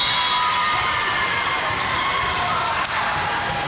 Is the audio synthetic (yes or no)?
no